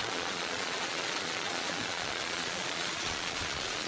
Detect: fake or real fake